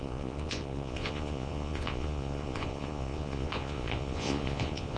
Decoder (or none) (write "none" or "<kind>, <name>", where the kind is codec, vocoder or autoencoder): vocoder, Vocos